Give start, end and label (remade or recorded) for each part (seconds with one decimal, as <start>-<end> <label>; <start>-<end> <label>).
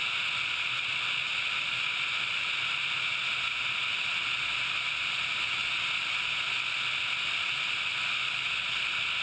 0.0-9.2 recorded